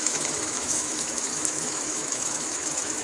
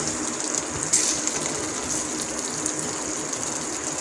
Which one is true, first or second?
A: second